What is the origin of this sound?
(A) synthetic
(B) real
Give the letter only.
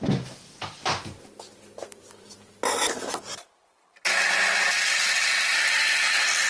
B